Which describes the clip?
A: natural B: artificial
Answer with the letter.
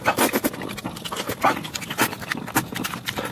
A